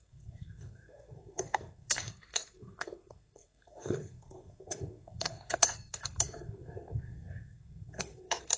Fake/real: fake